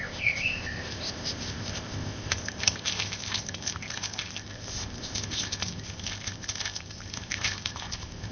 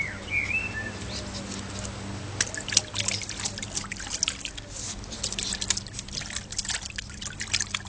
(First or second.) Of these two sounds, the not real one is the first